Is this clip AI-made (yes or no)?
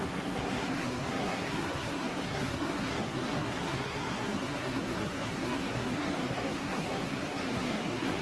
yes